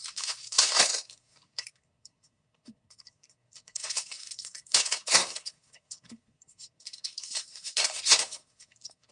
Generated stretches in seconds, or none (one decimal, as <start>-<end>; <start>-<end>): 0.0-9.1